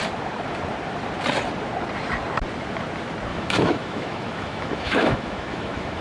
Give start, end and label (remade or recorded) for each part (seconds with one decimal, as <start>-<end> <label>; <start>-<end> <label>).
0.0-3.3 recorded; 3.3-6.0 remade